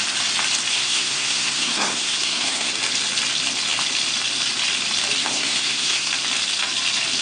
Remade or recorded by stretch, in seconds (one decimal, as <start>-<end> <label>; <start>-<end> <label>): 0.0-0.7 recorded; 0.7-2.7 remade; 2.7-5.2 recorded; 5.2-6.1 remade; 6.1-7.2 recorded